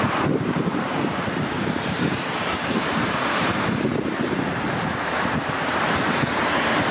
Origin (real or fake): fake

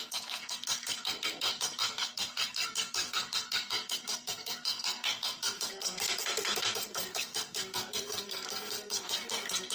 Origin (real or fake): fake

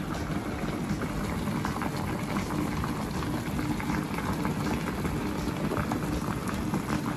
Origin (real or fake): real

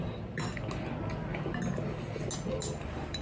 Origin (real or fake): real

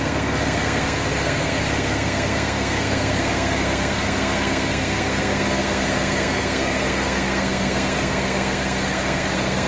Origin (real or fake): fake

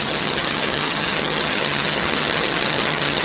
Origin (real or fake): fake